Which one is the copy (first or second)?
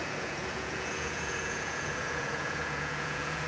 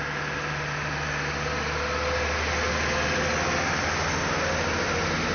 first